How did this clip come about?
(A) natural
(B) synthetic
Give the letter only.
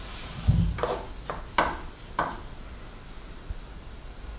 A